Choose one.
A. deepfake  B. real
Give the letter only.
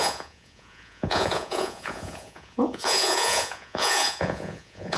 A